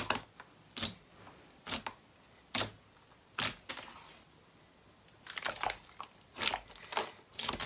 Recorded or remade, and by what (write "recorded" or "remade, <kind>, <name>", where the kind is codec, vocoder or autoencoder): recorded